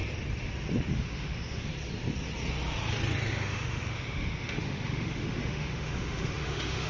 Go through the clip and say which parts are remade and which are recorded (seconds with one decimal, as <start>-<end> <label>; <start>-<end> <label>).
0.0-0.9 recorded; 0.9-1.7 remade; 1.7-3.3 recorded; 3.3-6.9 remade

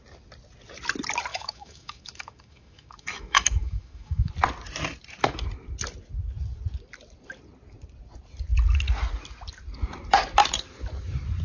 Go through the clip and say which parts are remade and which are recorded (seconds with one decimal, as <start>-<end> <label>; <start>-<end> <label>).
0.0-1.3 recorded; 1.3-4.3 remade; 4.3-11.4 recorded